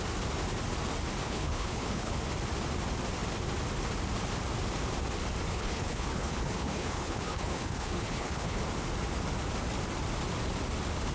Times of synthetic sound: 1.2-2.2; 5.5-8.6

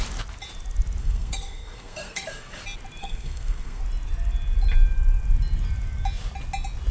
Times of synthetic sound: 1.0-2.6; 3.0-3.8

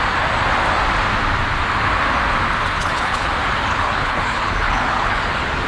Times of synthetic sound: 2.8-3.3; 3.7-5.2

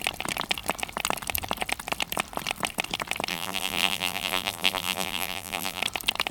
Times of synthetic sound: 3.3-5.8

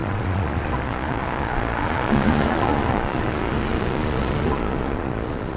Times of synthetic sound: 0.0-5.6

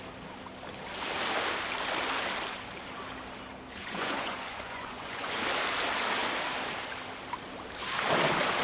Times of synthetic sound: 3.8-5.4

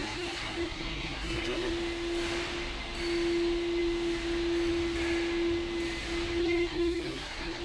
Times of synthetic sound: 0.0-1.7; 6.4-7.6